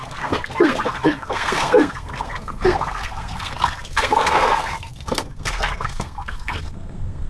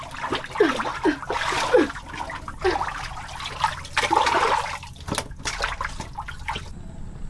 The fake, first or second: first